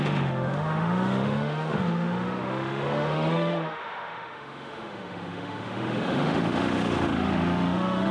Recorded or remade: remade